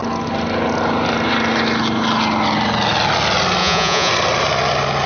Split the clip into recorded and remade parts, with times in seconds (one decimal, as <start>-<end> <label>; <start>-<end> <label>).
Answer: 0.0-3.6 recorded; 3.6-4.1 remade; 4.1-5.1 recorded